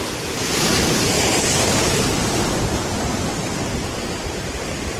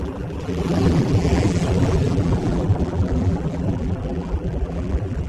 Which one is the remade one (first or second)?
second